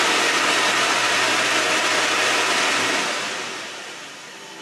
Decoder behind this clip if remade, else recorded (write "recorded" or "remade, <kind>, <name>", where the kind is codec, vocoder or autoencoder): recorded